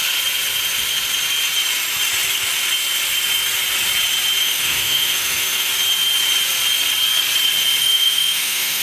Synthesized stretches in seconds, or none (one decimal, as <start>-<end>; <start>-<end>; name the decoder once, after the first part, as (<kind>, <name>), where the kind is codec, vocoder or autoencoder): 4.4-5.7 (autoencoder, DAC-VAE); 7.8-8.8